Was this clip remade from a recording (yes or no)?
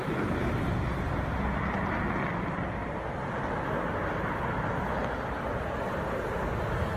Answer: no